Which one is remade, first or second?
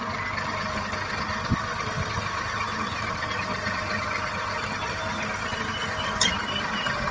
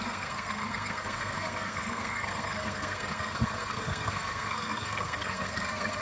second